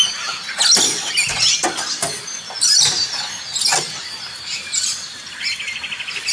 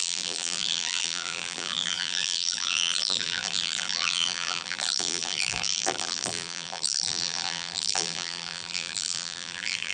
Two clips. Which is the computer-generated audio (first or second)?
second